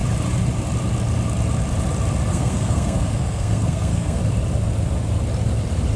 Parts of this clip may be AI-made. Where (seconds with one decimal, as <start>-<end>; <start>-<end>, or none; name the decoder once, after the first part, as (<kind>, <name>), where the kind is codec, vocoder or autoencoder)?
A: 2.3-4.2 (codec, SNAC)